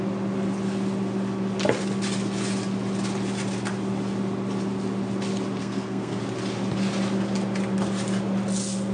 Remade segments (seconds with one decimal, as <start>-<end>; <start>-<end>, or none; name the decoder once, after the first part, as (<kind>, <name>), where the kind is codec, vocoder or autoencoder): 5.6-6.2 (codec, SNAC)